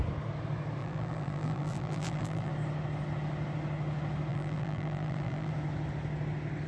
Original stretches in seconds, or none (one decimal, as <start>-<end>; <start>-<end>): 0.0-0.8; 2.5-4.3; 5.5-6.7